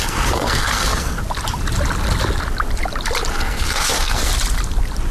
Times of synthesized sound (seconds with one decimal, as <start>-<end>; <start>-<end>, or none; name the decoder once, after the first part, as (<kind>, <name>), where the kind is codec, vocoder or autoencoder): 0.0-1.2 (codec, SNAC); 3.3-4.3